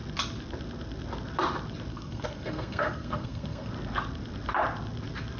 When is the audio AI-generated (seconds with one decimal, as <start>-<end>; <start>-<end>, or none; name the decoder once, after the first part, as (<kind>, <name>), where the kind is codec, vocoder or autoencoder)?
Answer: 1.9-3.7 (codec, SNAC)